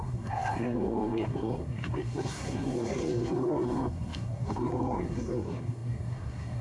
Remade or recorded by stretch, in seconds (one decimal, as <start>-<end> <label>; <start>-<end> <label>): 0.0-6.6 remade